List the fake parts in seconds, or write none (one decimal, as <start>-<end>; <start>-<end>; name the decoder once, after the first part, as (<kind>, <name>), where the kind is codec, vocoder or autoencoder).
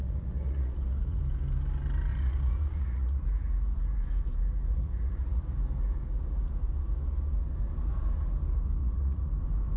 0.0-1.2 (vocoder, Vocos); 2.1-3.2; 4.7-5.4; 8.8-9.3